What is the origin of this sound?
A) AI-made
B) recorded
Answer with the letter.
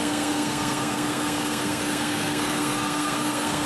A